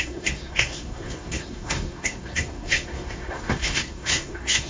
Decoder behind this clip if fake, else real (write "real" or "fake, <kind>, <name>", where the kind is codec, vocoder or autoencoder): fake, codec, SNAC